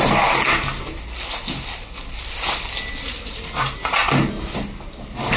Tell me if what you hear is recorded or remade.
recorded